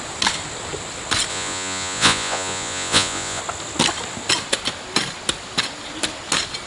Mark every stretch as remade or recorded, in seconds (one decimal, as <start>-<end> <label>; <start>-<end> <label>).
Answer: 0.0-1.3 recorded; 1.3-3.4 remade; 3.4-6.7 recorded